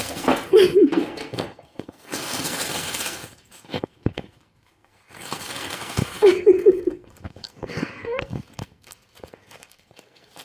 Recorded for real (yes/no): no